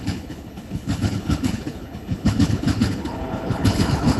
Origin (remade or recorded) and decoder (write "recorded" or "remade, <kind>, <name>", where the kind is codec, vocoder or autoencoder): remade, codec, HILCodec